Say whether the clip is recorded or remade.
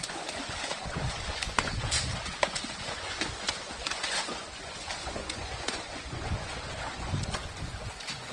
remade